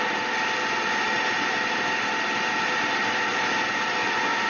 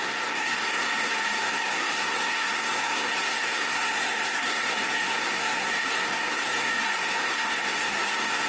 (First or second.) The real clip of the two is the first